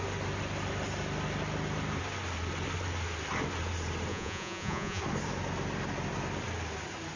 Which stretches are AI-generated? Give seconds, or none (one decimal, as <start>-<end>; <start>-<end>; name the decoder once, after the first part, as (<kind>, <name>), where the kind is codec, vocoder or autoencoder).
4.1-5.0 (vocoder, Vocos)